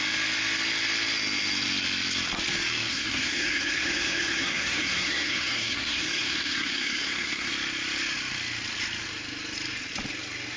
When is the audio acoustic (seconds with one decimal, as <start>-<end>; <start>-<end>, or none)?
0.0-2.9; 7.5-10.6